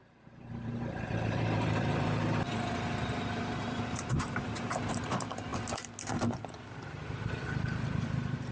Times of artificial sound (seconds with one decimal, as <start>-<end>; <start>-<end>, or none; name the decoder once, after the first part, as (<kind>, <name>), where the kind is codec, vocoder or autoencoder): 0.0-5.5 (vocoder, BigVGAN v2); 6.4-8.5